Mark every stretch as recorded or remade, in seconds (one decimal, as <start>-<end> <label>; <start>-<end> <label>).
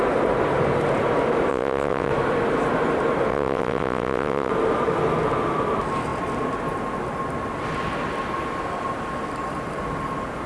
0.0-1.5 recorded; 1.5-2.1 remade; 2.1-3.3 recorded; 3.3-4.5 remade; 4.5-10.5 recorded